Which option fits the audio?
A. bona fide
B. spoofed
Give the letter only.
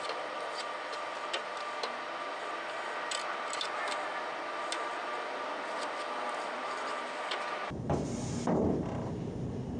A